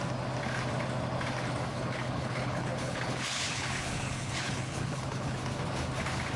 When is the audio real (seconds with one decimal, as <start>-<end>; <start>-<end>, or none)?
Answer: 0.0-1.7; 5.4-6.4